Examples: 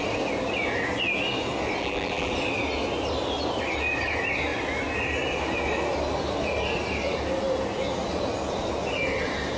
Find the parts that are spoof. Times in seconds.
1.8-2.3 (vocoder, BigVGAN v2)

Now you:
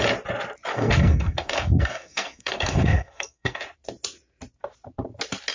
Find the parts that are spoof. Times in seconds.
0.7-3.6 (codec, SNAC)